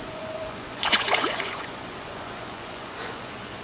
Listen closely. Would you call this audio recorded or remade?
remade